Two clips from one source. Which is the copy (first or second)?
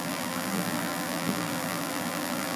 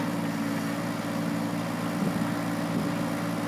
first